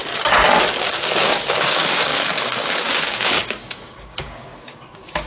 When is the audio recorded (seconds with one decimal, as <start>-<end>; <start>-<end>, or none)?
0.0-0.8